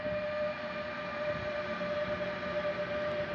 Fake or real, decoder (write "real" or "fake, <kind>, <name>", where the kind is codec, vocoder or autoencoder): real